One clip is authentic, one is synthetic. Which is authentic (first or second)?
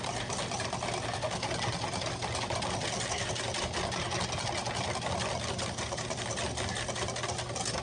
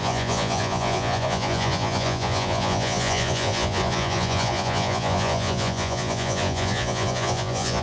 first